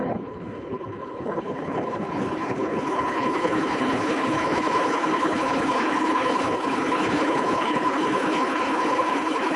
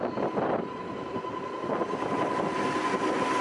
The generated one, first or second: first